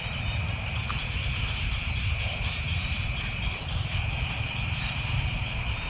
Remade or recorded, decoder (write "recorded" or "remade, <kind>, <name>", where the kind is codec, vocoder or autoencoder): remade, vocoder, BigVGAN v2